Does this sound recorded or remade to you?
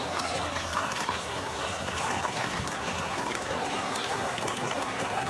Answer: remade